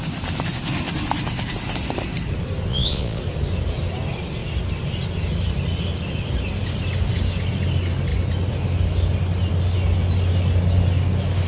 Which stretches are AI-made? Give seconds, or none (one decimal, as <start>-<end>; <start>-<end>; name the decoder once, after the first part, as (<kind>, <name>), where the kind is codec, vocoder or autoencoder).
2.7-3.2 (vocoder, Vocos)